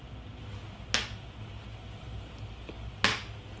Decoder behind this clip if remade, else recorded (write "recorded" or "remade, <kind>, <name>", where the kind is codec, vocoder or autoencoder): recorded